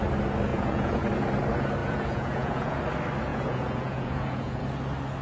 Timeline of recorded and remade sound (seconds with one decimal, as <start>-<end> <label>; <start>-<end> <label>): 0.0-0.5 recorded; 0.5-1.0 remade; 1.0-1.8 recorded; 1.8-2.8 remade; 2.8-3.3 recorded; 3.3-4.6 remade; 4.6-5.2 recorded